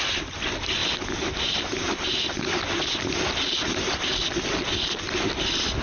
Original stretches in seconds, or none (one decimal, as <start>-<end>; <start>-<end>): 0.0-5.8